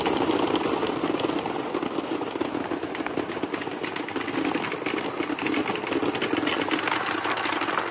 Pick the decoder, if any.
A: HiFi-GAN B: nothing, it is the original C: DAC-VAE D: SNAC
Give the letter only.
B